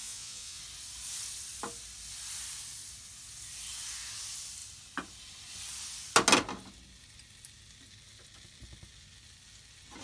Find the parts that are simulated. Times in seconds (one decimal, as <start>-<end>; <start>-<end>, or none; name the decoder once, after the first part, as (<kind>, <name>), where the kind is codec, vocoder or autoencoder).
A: 0.0-0.6 (vocoder, Vocos)